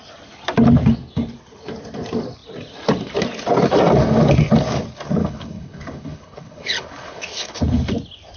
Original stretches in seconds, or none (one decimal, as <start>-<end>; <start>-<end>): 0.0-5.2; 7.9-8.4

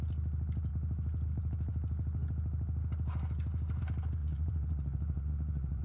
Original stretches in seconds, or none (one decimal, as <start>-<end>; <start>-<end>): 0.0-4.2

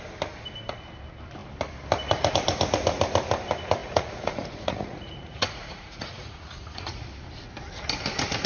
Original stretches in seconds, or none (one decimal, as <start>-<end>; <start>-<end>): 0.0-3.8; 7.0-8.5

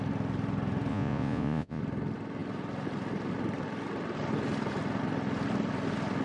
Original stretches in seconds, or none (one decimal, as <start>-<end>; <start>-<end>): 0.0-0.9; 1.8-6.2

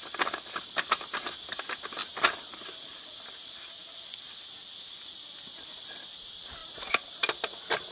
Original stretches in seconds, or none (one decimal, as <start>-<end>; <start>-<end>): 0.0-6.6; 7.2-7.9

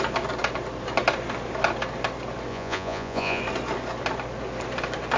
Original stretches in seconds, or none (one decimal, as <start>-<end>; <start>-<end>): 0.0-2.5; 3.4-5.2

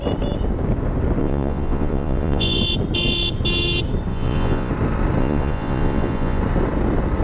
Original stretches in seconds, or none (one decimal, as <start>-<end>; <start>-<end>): 0.0-1.2; 2.6-4.1; 4.7-5.2; 6.4-7.2